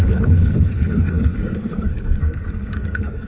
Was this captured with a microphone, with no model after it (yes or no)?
no